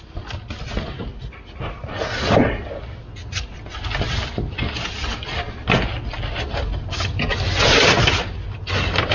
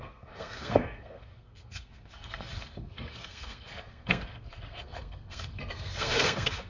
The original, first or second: first